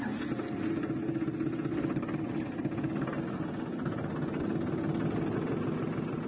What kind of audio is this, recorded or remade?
recorded